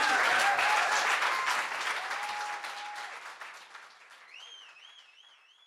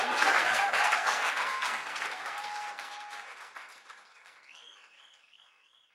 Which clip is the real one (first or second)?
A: first